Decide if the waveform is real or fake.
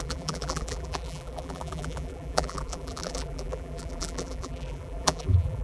fake